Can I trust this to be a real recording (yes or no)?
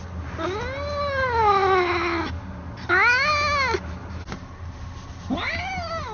yes